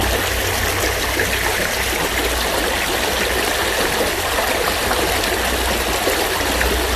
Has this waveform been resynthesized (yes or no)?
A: no